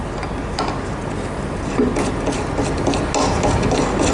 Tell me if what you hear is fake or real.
real